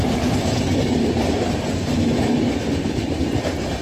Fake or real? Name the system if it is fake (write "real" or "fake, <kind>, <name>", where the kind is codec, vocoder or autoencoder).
real